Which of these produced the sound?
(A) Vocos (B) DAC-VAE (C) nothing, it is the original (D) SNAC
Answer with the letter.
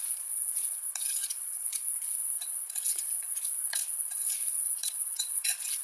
A